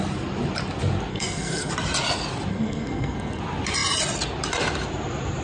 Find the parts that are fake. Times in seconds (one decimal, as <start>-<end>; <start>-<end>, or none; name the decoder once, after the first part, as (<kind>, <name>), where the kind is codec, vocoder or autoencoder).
1.1-1.7 (codec, SNAC); 2.5-3.4